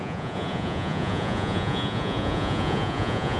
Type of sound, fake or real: fake